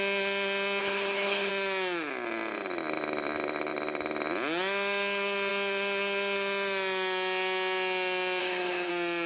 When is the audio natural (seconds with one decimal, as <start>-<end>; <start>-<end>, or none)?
0.0-0.8; 1.5-8.4; 8.9-9.3